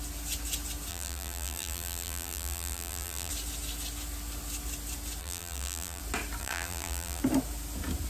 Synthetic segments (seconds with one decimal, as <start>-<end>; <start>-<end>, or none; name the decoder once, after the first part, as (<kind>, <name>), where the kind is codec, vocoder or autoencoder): 0.9-3.3 (vocoder, BigVGAN v2); 5.2-6.0; 6.4-7.2